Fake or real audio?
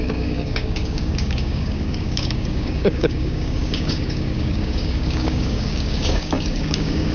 fake